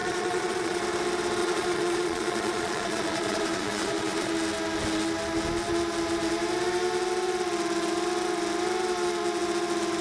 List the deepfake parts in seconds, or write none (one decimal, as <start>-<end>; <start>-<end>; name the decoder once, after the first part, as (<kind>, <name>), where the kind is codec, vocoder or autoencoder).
0.0-0.8 (vocoder, Vocos); 1.4-4.3